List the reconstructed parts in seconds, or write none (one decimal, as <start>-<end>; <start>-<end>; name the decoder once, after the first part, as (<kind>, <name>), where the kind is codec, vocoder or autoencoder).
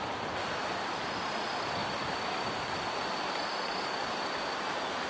1.8-5.1 (vocoder, BigVGAN v2)